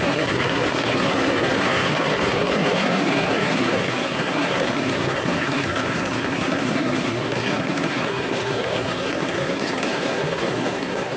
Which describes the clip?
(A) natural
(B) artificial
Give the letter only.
B